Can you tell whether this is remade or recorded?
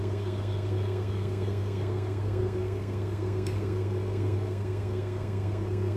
remade